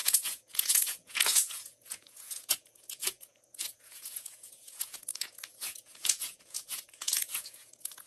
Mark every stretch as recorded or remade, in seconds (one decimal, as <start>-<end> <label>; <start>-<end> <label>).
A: 0.0-8.1 remade

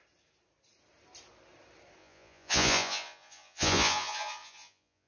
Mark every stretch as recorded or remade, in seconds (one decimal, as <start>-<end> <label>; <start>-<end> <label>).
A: 0.0-2.0 recorded; 2.0-5.1 remade

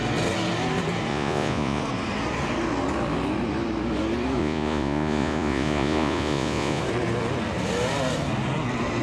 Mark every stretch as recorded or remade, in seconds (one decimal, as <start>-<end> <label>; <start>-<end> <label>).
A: 0.0-1.1 recorded; 1.1-1.8 remade; 1.8-4.4 recorded; 4.4-6.8 remade; 6.8-9.0 recorded

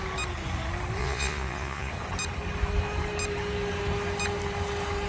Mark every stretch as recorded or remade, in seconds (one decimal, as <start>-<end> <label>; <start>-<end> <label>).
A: 0.0-1.0 recorded; 1.0-1.9 remade; 1.9-5.1 recorded

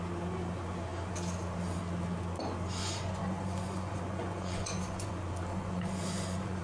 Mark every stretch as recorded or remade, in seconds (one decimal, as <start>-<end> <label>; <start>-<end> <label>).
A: 0.0-2.8 recorded; 2.8-5.1 remade; 5.1-5.5 recorded; 5.5-6.6 remade